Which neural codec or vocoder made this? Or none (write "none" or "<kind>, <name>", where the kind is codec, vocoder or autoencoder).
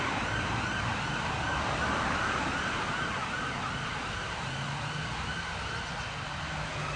none